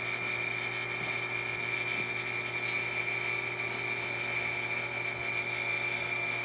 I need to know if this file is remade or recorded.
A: recorded